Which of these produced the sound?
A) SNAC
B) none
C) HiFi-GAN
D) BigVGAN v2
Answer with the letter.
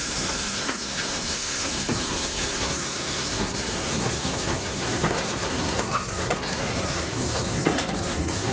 A